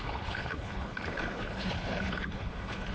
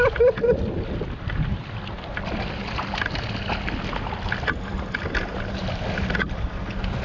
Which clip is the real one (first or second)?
second